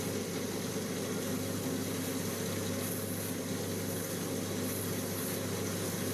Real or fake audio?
real